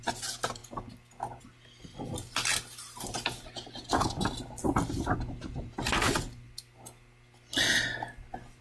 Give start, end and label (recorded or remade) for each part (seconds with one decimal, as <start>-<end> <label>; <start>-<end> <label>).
0.0-8.6 recorded